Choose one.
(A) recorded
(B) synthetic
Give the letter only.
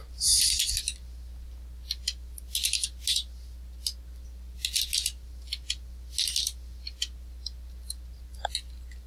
A